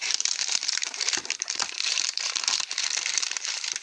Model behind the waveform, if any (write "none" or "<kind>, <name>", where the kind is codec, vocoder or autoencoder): vocoder, BigVGAN v2